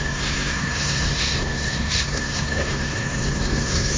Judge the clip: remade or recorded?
remade